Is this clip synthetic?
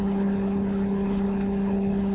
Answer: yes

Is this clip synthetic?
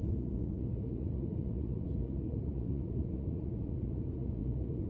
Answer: yes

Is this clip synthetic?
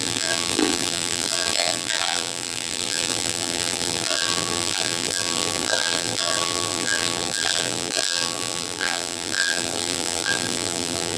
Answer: yes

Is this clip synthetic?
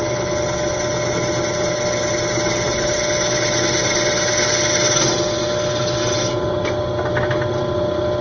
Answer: no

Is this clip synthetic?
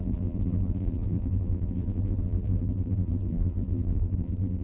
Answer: yes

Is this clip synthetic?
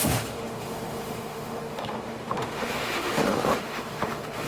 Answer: yes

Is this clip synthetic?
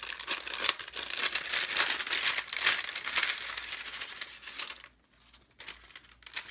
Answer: no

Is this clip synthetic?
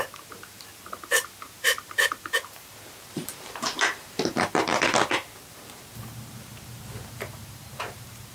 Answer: yes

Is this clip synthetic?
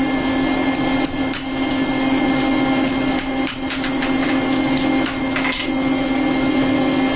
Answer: no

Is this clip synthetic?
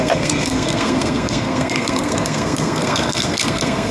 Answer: yes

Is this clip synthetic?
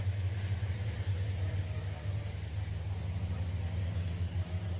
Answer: no